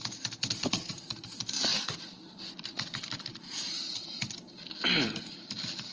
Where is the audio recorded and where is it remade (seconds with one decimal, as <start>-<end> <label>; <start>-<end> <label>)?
0.0-0.9 recorded; 0.9-5.9 remade